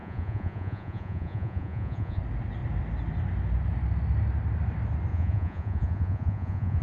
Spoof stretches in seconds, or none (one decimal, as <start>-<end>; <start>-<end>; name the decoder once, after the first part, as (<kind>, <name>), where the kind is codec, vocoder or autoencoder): 0.0-2.2 (vocoder, Vocos); 5.1-6.8